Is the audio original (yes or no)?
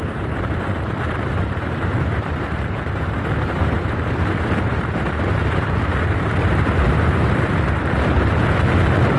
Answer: no